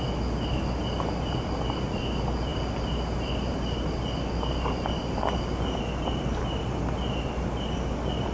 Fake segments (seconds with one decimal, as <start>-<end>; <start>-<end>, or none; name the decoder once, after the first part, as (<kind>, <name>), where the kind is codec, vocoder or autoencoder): none